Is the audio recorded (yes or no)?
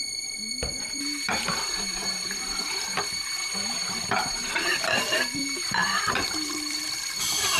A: no